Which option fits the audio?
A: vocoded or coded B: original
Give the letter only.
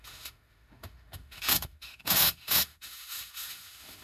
A